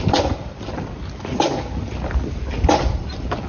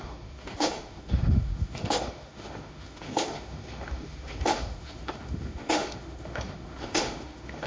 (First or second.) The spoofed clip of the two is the second